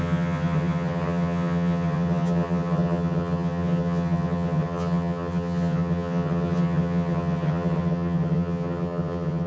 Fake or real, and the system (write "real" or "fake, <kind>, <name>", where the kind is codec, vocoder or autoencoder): fake, vocoder, HiFi-GAN